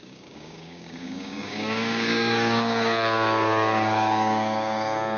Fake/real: fake